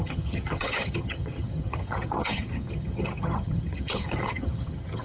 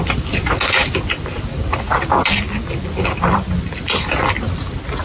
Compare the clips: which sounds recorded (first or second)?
second